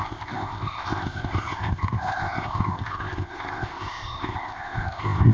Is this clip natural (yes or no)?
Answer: no